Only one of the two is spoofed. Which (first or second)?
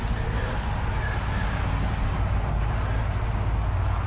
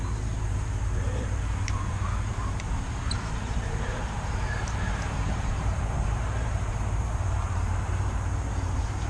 second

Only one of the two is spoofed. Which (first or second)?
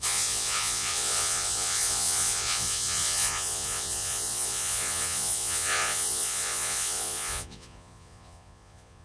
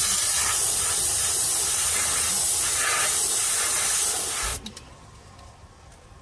first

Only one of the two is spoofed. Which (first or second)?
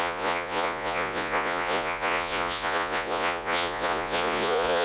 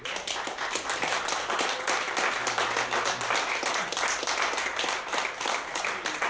first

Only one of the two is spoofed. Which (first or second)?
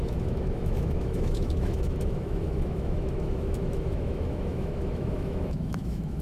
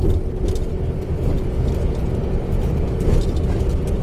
first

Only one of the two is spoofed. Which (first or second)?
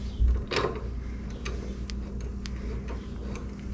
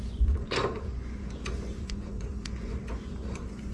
second